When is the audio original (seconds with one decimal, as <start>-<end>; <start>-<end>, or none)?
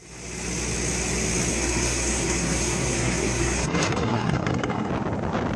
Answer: 0.0-1.5; 4.9-5.6